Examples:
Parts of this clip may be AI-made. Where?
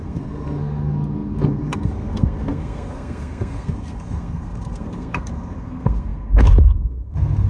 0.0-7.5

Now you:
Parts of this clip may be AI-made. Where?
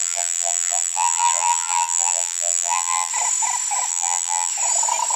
0.0-3.1; 3.9-4.5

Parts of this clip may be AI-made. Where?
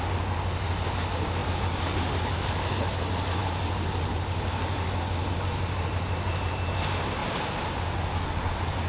none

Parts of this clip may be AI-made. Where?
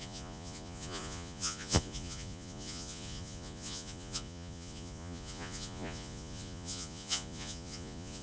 0.0-8.2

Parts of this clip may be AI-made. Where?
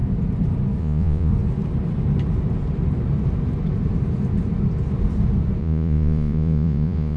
0.8-1.3; 5.6-7.2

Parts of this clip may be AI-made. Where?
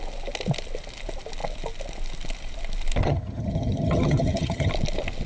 3.0-4.7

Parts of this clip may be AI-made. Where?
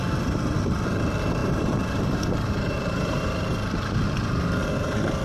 1.4-3.4